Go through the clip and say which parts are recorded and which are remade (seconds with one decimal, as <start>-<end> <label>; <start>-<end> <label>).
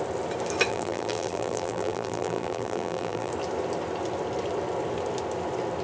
0.0-0.7 recorded; 0.7-3.3 remade; 3.3-5.8 recorded